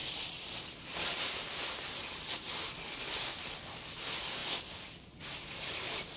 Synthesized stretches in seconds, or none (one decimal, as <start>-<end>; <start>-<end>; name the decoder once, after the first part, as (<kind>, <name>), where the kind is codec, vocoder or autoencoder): none